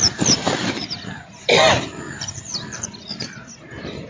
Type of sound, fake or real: real